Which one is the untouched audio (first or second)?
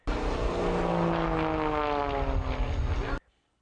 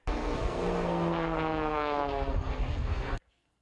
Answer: first